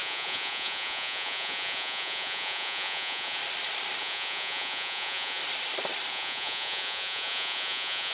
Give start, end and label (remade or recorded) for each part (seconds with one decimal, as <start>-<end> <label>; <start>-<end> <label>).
0.0-3.4 remade; 3.4-4.0 recorded; 4.0-5.4 remade; 5.4-6.1 recorded; 6.1-8.1 remade